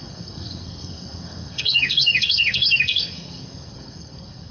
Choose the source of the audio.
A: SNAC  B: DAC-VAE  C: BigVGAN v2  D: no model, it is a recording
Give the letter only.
A